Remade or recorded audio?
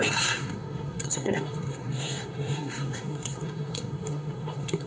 remade